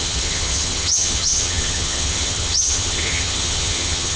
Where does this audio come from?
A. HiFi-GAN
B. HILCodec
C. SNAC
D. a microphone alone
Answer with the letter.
A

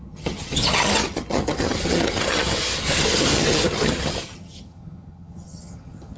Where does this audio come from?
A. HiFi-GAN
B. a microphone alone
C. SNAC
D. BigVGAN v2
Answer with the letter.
A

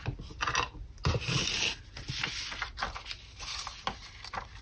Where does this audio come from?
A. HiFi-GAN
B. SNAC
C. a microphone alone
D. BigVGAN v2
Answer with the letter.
C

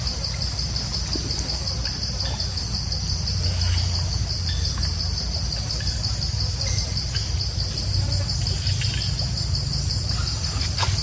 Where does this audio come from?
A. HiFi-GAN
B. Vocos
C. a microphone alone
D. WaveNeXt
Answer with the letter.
C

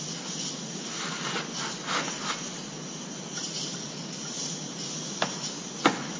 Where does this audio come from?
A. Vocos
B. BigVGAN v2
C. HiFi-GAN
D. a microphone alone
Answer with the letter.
D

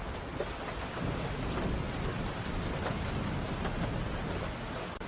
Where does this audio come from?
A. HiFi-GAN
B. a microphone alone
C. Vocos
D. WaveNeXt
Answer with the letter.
B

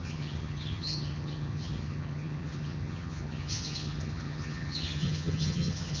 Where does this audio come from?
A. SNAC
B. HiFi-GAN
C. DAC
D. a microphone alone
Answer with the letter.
B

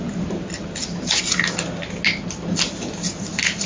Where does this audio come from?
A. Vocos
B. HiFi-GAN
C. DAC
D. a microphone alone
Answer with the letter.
D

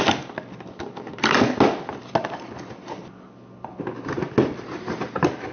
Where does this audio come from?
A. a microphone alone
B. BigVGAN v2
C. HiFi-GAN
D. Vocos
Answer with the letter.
A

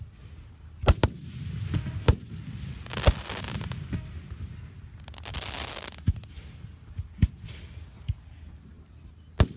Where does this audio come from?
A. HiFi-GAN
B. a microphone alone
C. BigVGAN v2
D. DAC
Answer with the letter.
B